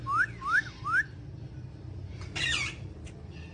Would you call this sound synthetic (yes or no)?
no